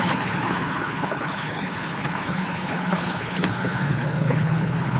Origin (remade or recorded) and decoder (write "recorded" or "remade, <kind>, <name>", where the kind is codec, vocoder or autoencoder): remade, codec, HILCodec